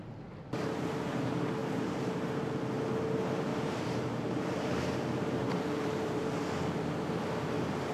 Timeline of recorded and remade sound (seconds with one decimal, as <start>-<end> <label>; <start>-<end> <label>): 0.0-1.6 recorded; 1.6-2.4 remade; 2.4-3.5 recorded; 3.5-4.8 remade; 4.8-5.4 recorded; 5.4-6.5 remade; 6.5-7.9 recorded